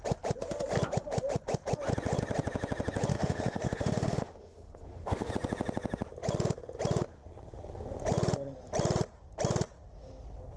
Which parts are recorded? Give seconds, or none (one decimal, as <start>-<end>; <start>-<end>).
0.0-3.1; 5.3-10.6